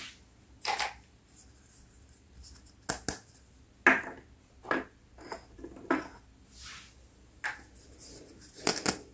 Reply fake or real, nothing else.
real